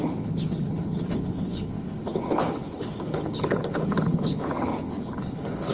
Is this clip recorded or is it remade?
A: remade